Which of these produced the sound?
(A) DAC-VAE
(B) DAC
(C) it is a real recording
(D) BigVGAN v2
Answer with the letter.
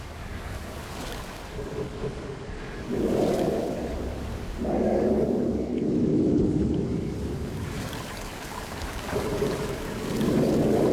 B